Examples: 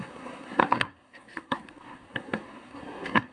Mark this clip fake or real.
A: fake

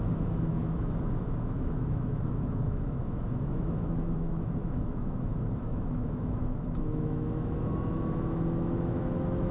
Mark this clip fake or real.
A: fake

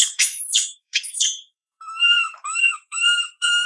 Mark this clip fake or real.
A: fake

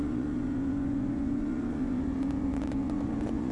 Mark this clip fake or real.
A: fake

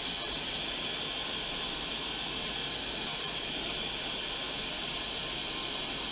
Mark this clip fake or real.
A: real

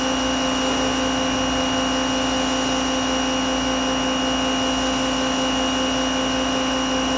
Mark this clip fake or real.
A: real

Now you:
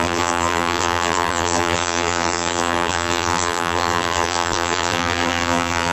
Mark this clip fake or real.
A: fake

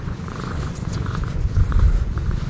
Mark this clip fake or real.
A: fake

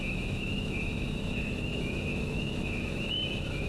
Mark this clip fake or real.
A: fake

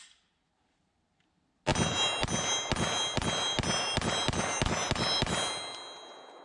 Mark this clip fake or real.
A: real